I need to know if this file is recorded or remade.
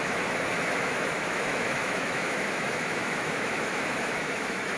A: remade